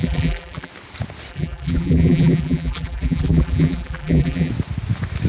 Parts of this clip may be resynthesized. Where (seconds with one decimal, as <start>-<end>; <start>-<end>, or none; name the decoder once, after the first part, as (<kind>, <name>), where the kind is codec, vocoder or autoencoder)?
0.0-0.7 (vocoder, BigVGAN v2); 1.3-4.5